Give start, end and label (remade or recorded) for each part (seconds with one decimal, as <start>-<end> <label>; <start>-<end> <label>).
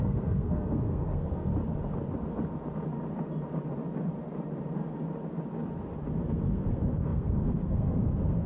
0.0-1.5 remade; 1.5-6.2 recorded; 6.2-8.5 remade